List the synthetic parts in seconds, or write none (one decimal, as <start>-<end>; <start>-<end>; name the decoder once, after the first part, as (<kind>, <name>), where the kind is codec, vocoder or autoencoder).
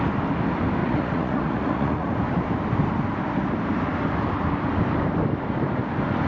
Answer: 0.8-2.1 (vocoder, Vocos)